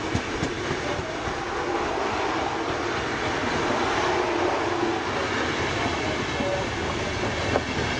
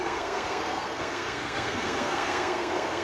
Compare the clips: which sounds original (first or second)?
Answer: first